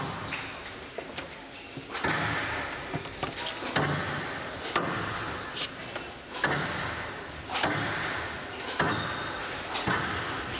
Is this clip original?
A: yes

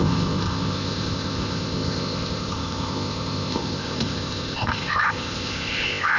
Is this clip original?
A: no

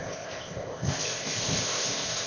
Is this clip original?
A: no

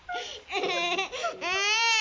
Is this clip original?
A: yes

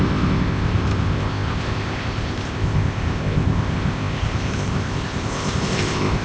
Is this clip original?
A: no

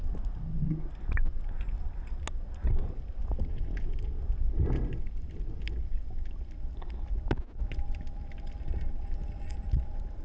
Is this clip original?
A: yes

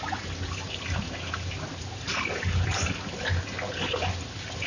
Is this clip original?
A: yes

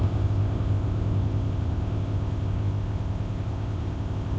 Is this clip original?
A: no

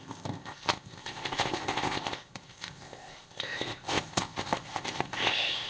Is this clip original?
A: no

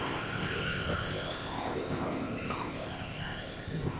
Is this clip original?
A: no